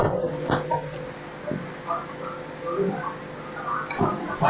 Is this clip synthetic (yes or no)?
no